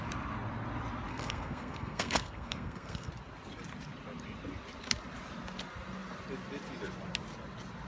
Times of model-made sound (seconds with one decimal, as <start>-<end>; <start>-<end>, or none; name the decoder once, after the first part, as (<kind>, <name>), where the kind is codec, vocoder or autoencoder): 1.1-3.1 (codec, SNAC)